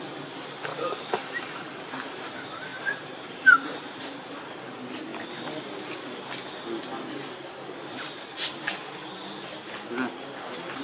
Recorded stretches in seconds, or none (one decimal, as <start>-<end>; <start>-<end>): 0.0-0.7; 2.3-2.7; 4.5-10.8